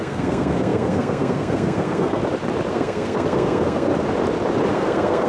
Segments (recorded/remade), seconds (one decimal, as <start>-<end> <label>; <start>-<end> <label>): 0.0-2.2 remade; 2.2-2.7 recorded; 2.7-3.9 remade; 3.9-4.7 recorded; 4.7-5.3 remade